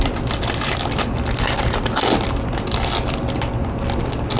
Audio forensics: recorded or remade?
recorded